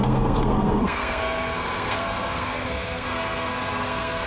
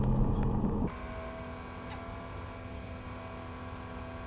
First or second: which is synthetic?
first